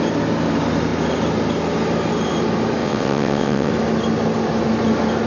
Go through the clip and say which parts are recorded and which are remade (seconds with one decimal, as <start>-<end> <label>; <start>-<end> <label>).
0.0-2.8 recorded; 2.8-3.7 remade; 3.7-5.3 recorded